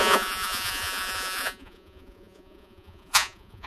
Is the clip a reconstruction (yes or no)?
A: yes